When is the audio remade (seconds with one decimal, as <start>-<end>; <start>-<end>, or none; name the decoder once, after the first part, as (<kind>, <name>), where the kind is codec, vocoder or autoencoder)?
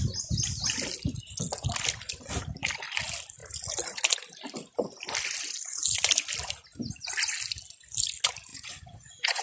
8.5-9.4 (vocoder, Vocos)